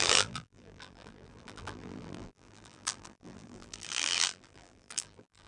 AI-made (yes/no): yes